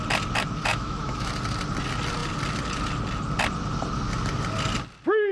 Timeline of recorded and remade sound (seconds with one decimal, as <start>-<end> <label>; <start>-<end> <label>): 0.0-0.7 recorded; 0.7-1.3 remade; 1.3-5.3 recorded